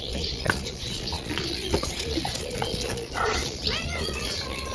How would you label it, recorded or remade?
remade